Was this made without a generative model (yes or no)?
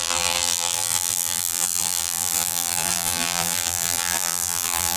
no